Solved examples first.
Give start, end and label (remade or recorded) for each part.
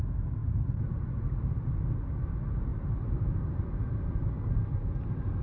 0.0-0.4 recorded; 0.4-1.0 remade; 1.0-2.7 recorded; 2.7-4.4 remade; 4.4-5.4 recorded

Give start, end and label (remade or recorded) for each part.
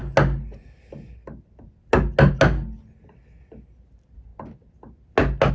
0.0-5.5 recorded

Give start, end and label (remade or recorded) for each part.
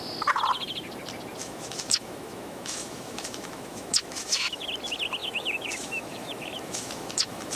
0.0-1.4 recorded; 1.4-4.7 remade; 4.7-5.2 recorded; 5.2-7.6 remade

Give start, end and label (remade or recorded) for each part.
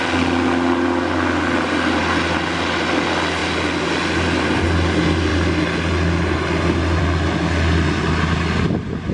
0.0-9.1 recorded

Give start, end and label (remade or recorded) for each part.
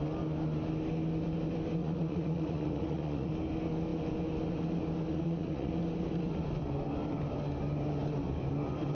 0.0-1.8 recorded; 1.8-3.3 remade; 3.3-5.1 recorded; 5.1-5.7 remade; 5.7-8.9 recorded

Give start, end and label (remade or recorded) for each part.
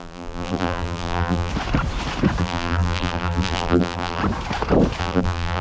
0.0-1.5 remade; 1.5-2.4 recorded; 2.4-4.2 remade; 4.2-5.0 recorded; 5.0-5.6 remade